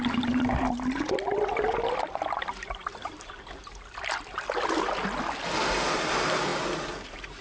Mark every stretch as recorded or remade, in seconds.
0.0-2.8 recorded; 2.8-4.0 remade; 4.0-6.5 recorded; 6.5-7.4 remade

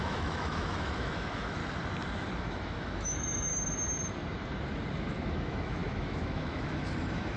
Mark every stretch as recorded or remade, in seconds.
0.0-1.6 remade; 1.6-2.4 recorded; 2.4-3.5 remade; 3.5-5.1 recorded; 5.1-7.4 remade

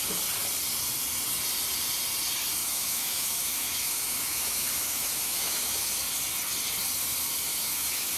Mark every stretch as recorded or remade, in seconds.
0.0-2.6 recorded; 2.6-5.9 remade; 5.9-7.5 recorded; 7.5-8.2 remade

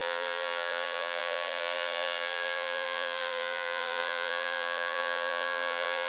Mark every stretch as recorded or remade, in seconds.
0.0-6.1 remade

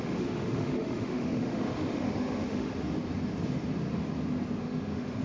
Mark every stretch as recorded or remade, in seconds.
0.0-2.7 remade; 2.7-4.6 recorded; 4.6-5.2 remade

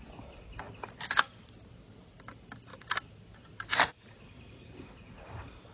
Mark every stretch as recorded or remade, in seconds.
0.0-5.7 recorded